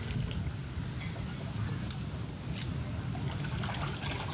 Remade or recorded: recorded